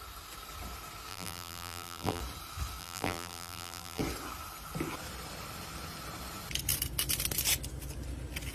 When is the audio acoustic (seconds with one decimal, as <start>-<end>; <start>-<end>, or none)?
0.0-1.1; 2.2-2.8; 4.0-8.5